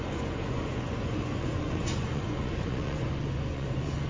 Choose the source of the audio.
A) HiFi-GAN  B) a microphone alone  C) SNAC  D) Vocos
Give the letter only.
D